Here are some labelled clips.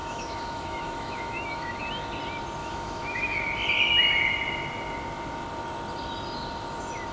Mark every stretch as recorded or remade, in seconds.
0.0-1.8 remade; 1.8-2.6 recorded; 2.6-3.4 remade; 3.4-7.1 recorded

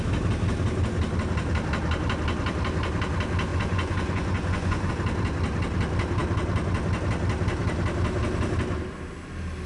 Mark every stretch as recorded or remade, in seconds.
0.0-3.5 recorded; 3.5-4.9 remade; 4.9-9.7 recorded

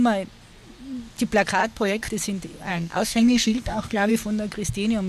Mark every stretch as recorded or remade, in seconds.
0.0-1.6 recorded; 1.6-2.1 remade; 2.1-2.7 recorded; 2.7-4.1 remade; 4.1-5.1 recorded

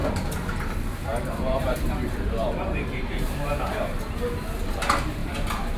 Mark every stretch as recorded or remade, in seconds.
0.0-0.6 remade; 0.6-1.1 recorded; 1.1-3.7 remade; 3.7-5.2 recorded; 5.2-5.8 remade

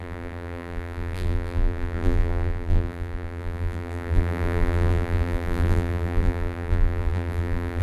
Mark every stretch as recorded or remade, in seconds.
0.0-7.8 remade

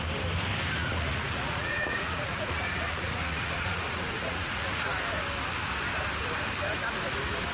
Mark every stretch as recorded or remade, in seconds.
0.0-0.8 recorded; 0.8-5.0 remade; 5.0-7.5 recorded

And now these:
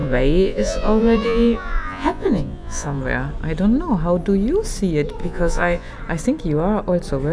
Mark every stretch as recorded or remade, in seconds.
0.0-3.0 remade; 3.0-5.2 recorded; 5.2-5.9 remade; 5.9-7.3 recorded

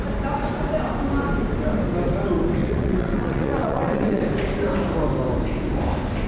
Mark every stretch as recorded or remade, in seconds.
0.0-2.6 recorded; 2.6-4.2 remade; 4.2-6.3 recorded